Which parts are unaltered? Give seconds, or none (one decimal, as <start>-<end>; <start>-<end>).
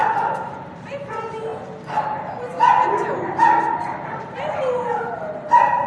0.0-0.7; 1.5-3.9